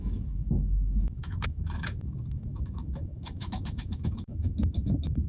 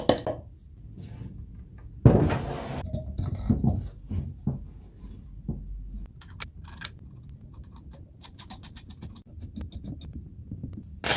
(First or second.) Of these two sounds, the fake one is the first